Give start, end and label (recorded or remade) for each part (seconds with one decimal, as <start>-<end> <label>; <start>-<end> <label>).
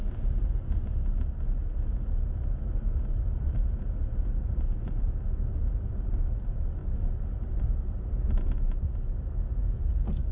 0.0-6.8 recorded; 6.8-8.1 remade; 8.1-10.3 recorded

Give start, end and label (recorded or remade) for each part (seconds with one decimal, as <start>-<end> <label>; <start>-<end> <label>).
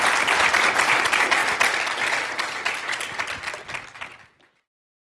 0.0-5.0 recorded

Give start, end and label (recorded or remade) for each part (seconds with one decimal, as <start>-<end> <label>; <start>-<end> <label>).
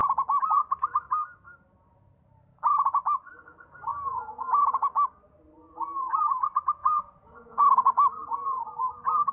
0.0-6.8 recorded; 6.8-7.6 remade; 7.6-9.3 recorded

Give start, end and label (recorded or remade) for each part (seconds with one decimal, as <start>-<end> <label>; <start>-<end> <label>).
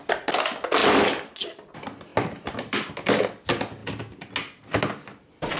0.0-5.6 recorded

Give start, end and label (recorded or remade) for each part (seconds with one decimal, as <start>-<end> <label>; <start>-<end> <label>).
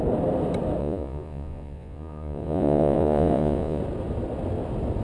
0.0-0.8 recorded; 0.8-3.8 remade; 3.8-5.0 recorded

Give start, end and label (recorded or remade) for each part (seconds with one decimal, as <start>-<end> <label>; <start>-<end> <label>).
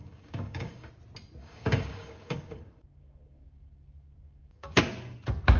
0.0-0.9 remade; 0.9-1.4 recorded; 1.4-4.8 remade; 4.8-5.6 recorded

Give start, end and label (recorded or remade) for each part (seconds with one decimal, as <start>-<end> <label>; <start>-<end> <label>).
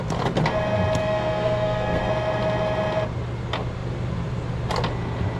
0.0-1.0 recorded; 1.0-2.1 remade; 2.1-5.4 recorded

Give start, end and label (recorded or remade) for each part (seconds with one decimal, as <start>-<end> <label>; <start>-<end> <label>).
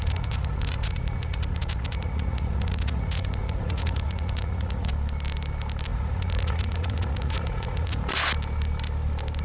0.0-4.9 remade; 4.9-5.9 recorded; 5.9-8.1 remade; 8.1-9.4 recorded